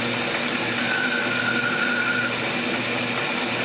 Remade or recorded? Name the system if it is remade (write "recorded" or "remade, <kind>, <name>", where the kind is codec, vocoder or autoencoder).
recorded